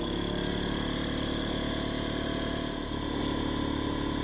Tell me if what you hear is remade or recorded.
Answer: recorded